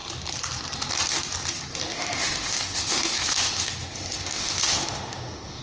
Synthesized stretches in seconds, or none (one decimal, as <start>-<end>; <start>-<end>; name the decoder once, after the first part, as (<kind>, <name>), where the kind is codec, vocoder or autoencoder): 1.9-5.6 (autoencoder, DAC-VAE)